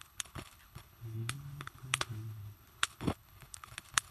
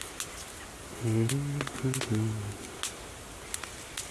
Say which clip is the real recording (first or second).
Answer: second